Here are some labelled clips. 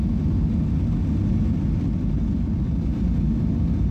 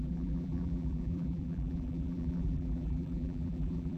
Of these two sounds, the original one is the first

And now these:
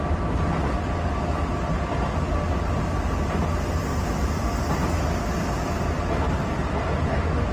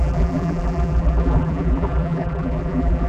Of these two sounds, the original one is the first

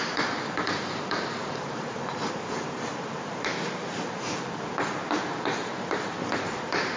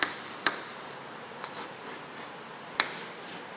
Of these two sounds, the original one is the second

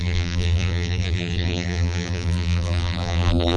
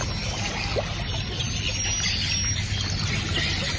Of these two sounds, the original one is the second